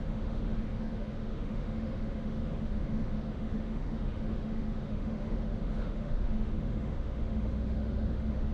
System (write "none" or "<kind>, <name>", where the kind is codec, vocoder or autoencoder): autoencoder, DAC-VAE